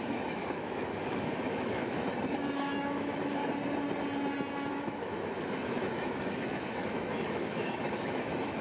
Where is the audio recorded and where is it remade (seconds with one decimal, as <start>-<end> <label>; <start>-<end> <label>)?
0.0-2.1 remade; 2.1-2.6 recorded; 2.6-3.4 remade; 3.4-4.7 recorded; 4.7-8.6 remade